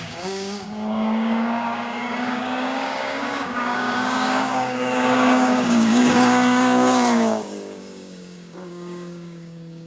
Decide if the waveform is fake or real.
fake